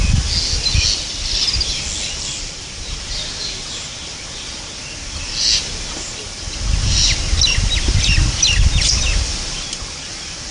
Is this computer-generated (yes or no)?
no